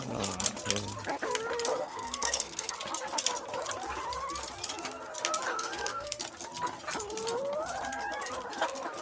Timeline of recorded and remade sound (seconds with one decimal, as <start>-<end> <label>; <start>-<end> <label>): 0.0-1.7 recorded; 1.7-2.7 remade; 2.7-5.5 recorded; 5.5-6.2 remade; 6.2-9.0 recorded